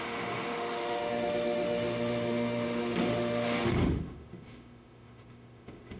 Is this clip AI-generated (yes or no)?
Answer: yes